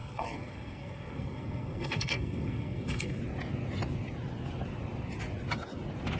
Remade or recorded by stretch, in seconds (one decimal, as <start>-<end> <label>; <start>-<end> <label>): 0.0-3.2 remade; 3.2-6.2 recorded